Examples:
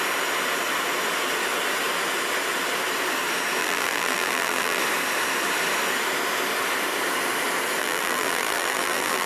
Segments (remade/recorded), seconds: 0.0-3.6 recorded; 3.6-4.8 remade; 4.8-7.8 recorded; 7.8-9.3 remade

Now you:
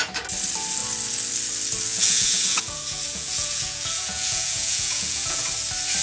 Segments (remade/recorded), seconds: 0.0-1.9 recorded; 1.9-5.5 remade; 5.5-6.0 recorded